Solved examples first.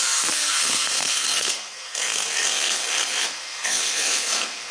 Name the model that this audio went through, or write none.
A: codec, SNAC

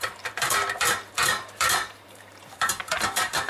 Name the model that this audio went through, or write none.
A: vocoder, BigVGAN v2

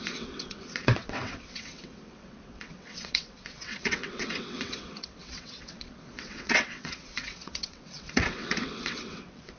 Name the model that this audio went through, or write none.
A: vocoder, WaveNeXt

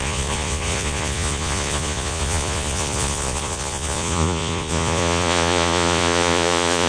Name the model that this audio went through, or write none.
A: vocoder, Vocos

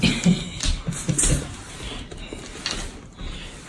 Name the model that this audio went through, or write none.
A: none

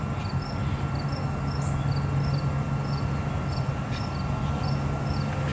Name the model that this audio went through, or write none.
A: none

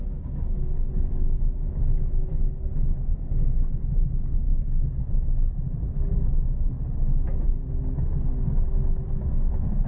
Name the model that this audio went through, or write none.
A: none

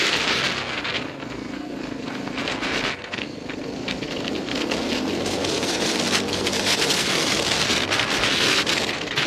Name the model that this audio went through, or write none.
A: codec, SNAC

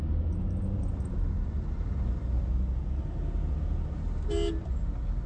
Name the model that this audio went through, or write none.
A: none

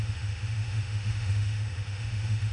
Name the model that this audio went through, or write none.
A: autoencoder, DAC-VAE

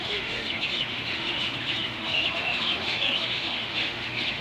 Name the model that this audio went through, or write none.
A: autoencoder, DAC-VAE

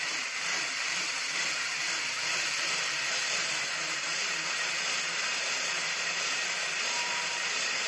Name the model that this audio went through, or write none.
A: vocoder, BigVGAN v2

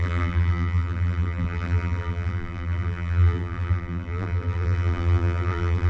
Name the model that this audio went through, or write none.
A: vocoder, BigVGAN v2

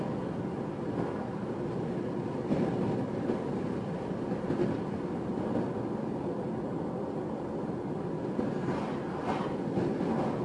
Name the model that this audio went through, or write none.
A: none